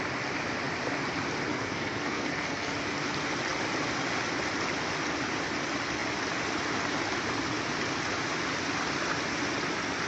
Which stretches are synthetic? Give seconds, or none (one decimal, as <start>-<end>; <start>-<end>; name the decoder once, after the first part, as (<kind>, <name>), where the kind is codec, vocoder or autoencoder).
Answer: 1.5-2.7 (codec, SNAC)